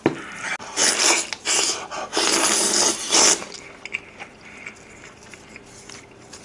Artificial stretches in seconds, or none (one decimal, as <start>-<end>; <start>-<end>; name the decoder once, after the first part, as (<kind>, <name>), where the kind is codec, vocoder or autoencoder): none